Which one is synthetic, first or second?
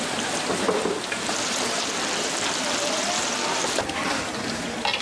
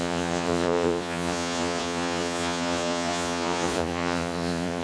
second